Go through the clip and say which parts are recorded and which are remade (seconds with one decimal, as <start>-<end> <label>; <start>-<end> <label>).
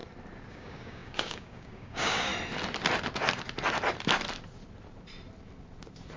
0.0-0.5 recorded; 0.5-2.3 remade; 2.3-6.2 recorded